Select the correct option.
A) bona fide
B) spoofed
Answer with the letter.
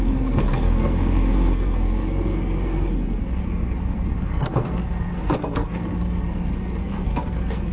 B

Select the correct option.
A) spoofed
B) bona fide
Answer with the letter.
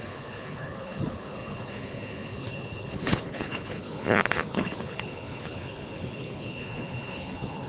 A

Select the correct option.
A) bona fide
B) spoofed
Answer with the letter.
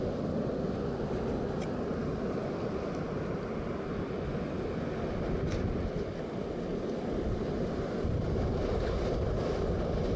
A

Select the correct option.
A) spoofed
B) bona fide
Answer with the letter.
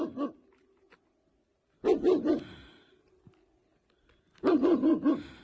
B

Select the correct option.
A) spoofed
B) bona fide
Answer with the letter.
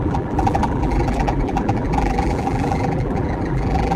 A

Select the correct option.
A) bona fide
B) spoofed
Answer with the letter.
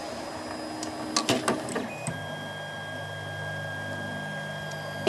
A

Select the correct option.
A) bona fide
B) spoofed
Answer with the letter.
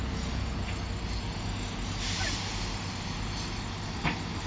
A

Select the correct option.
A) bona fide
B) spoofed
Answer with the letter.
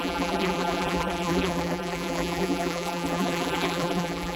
B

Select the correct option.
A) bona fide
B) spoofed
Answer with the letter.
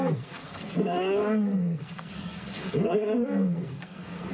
B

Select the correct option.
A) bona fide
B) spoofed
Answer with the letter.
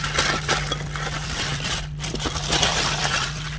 A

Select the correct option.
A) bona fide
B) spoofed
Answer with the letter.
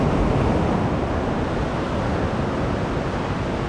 A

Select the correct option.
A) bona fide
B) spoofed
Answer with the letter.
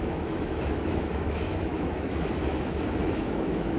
B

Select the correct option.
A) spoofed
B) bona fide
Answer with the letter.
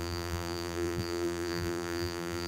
A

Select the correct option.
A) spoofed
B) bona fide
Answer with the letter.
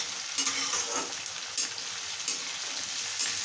B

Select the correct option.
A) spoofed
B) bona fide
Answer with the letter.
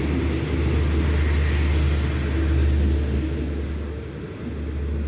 B